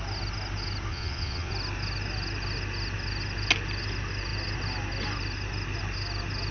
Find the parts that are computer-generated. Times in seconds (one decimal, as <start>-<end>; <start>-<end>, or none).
0.9-1.5